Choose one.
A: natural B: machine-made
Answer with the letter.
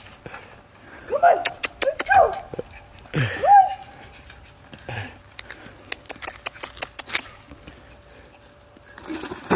A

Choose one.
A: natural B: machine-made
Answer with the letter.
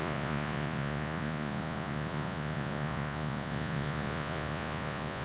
B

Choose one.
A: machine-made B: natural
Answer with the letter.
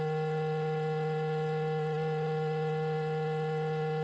B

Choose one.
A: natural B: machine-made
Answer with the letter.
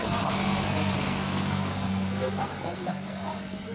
B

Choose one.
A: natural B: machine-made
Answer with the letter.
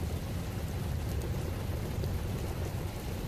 A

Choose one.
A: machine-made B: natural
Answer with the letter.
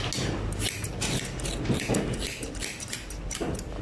B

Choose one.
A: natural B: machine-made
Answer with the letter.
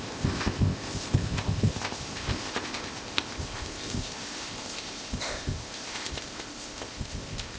B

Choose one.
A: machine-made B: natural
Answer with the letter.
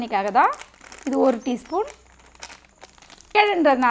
B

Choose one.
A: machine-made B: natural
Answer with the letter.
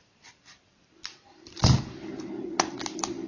B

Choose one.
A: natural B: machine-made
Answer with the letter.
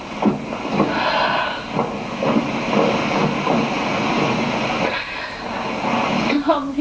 A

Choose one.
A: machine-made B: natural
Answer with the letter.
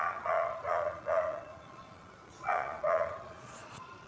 A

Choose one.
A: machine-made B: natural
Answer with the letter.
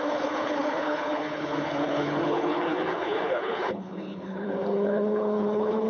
A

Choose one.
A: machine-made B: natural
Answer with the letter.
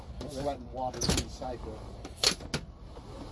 B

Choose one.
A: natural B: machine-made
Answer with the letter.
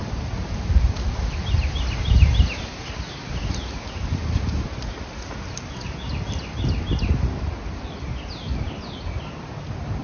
A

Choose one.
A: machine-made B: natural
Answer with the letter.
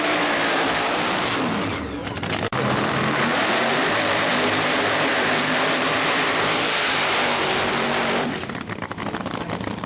A